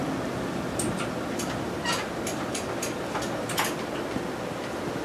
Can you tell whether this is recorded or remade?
recorded